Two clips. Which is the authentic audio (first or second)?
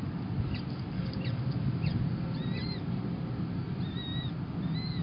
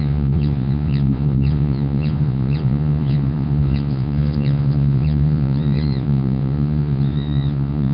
first